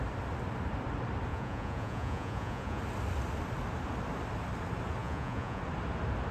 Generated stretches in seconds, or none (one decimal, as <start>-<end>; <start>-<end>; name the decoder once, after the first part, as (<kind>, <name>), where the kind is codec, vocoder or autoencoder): 1.3-2.8 (vocoder, Vocos); 5.0-5.6